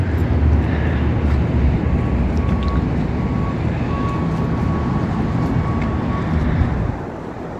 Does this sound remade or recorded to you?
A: recorded